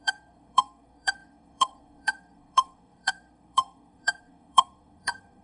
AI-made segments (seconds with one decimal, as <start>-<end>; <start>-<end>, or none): 0.0-5.4